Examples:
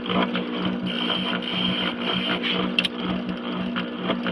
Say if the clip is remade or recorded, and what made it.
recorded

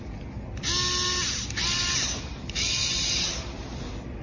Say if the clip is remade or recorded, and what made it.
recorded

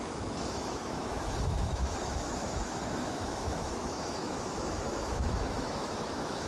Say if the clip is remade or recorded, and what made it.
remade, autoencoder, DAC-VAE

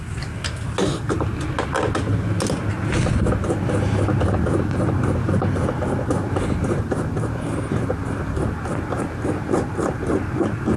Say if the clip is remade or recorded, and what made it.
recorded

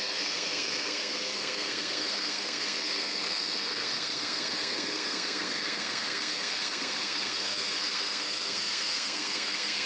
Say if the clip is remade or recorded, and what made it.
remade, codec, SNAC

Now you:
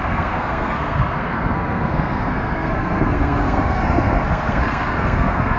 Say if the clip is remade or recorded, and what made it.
remade, codec, SNAC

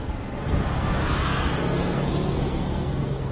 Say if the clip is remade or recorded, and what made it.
remade, codec, SNAC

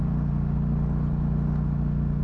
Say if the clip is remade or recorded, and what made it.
recorded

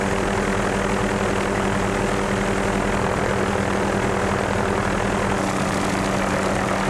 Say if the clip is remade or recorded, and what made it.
recorded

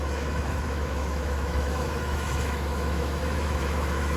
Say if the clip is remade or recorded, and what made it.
remade, autoencoder, DAC-VAE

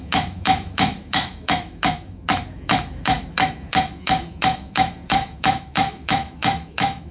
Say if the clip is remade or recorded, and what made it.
remade, autoencoder, DAC-VAE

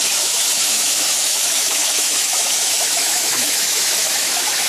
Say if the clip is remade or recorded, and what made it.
remade, autoencoder, DAC-VAE